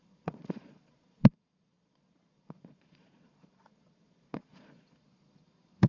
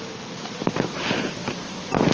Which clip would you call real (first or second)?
second